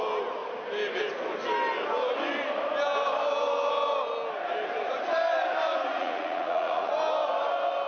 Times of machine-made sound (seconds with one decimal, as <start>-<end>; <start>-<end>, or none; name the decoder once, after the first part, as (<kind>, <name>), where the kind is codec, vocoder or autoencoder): 6.0-6.9 (vocoder, Vocos)